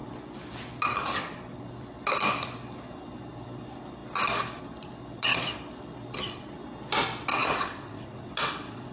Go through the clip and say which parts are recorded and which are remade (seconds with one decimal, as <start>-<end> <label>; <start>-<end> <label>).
0.0-7.3 recorded; 7.3-8.9 remade